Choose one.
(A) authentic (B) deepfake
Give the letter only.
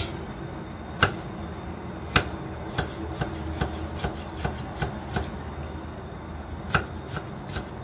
A